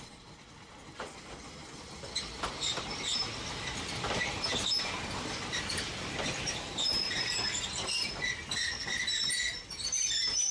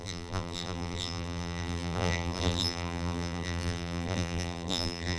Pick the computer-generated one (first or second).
second